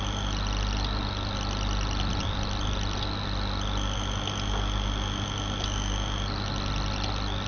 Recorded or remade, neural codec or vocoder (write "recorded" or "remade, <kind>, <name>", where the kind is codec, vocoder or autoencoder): recorded